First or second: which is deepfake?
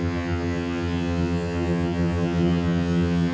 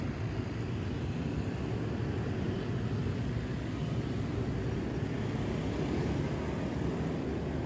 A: first